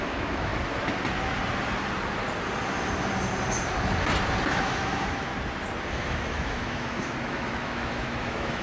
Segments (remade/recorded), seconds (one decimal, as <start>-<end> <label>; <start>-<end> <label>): 0.0-0.5 remade; 0.5-4.5 recorded; 4.5-5.3 remade; 5.3-5.9 recorded; 5.9-8.6 remade